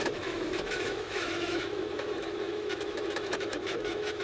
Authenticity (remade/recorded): remade